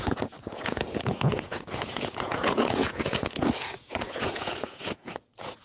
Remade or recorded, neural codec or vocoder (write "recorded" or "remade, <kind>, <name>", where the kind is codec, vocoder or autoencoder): remade, vocoder, Vocos